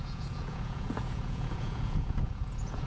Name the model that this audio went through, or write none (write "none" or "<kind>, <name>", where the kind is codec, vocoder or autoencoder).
vocoder, Vocos